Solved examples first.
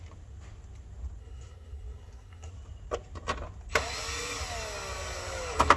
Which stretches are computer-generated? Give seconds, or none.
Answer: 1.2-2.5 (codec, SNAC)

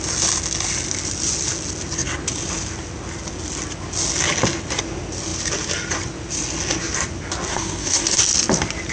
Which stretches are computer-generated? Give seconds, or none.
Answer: 7.5-8.2 (codec, DAC)